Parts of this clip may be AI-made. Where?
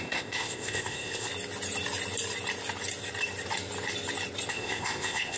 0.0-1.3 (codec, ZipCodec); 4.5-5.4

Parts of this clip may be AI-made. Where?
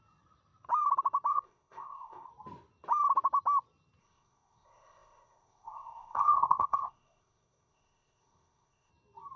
1.3-2.3 (codec, ZipCodec); 4.0-8.9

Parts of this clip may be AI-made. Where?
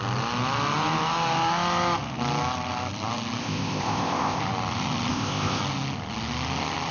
3.4-4.4 (codec, ZipCodec); 5.1-5.6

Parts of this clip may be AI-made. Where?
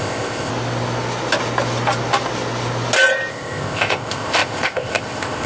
0.0-0.5 (codec, ZipCodec); 3.3-5.5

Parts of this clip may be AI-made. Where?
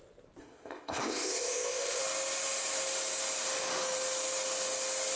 0.4-2.0 (codec, ZipCodec)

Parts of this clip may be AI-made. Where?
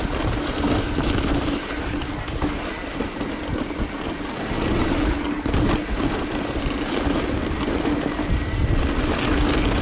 none